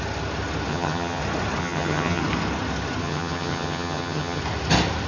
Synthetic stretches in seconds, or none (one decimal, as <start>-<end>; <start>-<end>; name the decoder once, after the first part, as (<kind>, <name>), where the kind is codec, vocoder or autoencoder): 0.7-1.2 (vocoder, HiFi-GAN); 1.6-2.2; 3.0-4.4